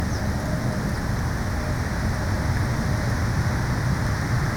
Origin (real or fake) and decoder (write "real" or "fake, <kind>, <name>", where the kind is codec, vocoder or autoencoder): real